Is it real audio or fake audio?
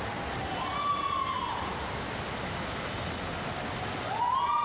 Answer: real